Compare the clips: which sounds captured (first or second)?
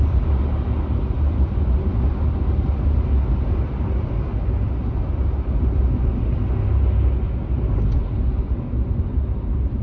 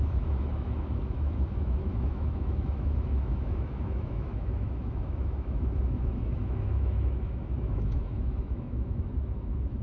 first